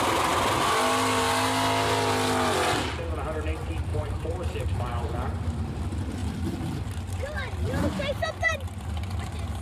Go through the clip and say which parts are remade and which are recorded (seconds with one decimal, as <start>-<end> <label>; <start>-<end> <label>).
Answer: 0.0-3.9 recorded; 3.9-5.1 remade; 5.1-6.2 recorded; 6.2-8.5 remade; 8.5-9.6 recorded